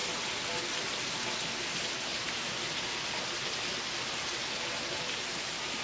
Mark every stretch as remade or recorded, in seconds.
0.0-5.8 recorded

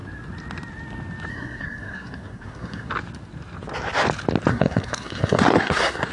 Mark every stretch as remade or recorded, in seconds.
0.0-1.3 recorded; 1.3-2.9 remade; 2.9-4.5 recorded; 4.5-6.1 remade

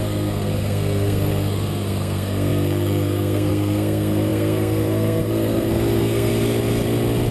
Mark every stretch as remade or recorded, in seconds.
0.0-6.3 remade; 6.3-7.3 recorded